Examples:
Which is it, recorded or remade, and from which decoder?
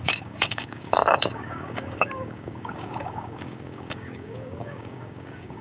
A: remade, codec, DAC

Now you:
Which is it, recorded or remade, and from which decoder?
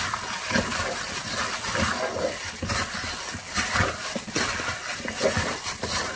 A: recorded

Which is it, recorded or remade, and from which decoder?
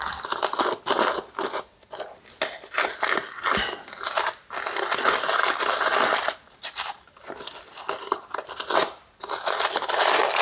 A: recorded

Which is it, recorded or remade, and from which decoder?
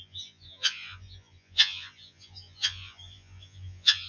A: remade, vocoder, Vocos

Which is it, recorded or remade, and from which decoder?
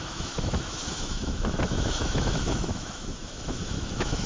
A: remade, autoencoder, DAC-VAE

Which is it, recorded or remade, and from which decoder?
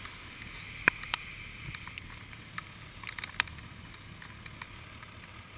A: recorded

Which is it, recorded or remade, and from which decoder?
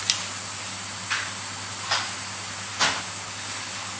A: recorded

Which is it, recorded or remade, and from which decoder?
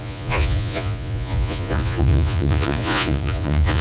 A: remade, vocoder, Vocos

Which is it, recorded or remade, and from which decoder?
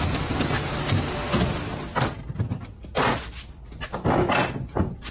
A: recorded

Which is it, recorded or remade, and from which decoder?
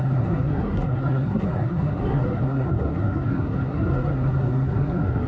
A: remade, codec, SNAC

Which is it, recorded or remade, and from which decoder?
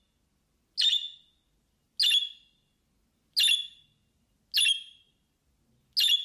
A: recorded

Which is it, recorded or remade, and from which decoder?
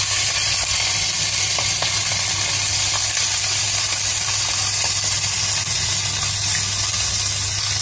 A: recorded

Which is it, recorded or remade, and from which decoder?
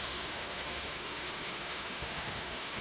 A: remade, autoencoder, DAC-VAE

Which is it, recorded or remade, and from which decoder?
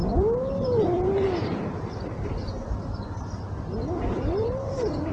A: remade, vocoder, BigVGAN v2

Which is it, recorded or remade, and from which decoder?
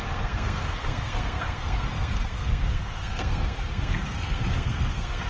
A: remade, codec, SNAC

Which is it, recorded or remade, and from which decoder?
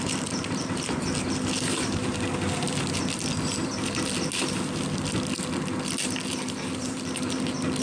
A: recorded